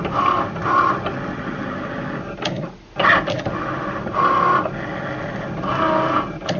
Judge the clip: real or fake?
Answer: real